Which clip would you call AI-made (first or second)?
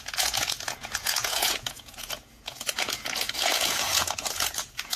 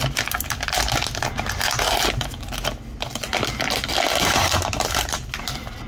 first